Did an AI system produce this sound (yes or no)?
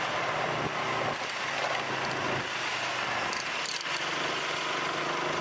no